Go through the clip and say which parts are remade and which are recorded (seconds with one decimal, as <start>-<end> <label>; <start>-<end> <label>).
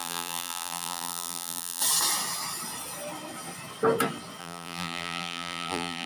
0.0-1.8 remade; 1.8-4.4 recorded; 4.4-6.1 remade